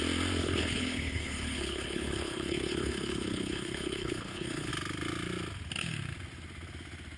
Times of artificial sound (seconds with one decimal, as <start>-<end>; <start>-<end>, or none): 0.4-4.7